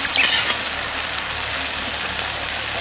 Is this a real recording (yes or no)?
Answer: yes